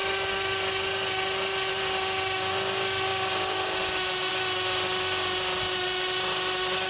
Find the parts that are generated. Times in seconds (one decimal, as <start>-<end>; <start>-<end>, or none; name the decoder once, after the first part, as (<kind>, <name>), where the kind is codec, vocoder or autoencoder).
none